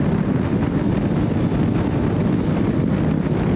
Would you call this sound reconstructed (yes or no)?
no